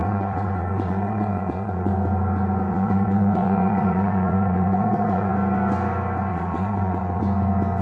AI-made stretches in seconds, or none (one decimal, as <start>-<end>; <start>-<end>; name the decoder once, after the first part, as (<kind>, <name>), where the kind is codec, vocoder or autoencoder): 0.0-1.9 (vocoder, Vocos); 2.7-5.3; 6.3-7.2